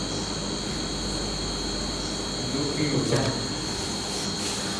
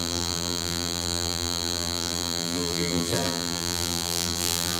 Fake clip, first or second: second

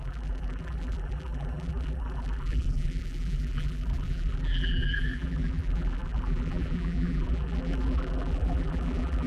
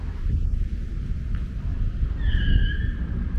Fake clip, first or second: first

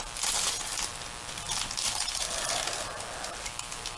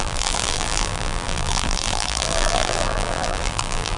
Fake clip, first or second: second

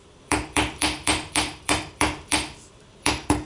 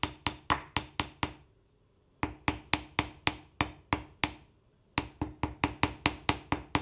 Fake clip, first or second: first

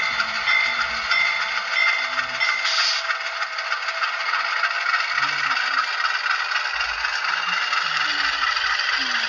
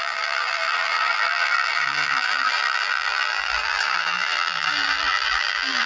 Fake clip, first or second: second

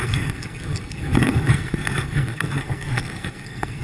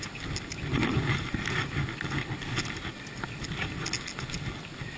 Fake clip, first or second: first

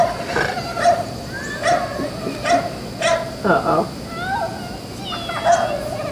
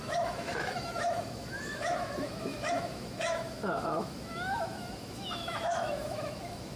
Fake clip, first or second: second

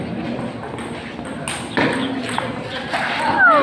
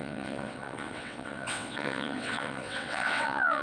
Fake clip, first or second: second